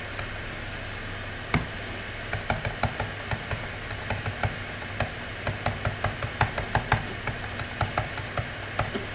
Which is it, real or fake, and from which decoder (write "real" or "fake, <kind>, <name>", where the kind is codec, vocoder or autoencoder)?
real